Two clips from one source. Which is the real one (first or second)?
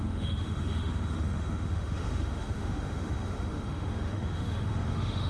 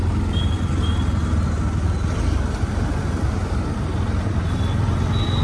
second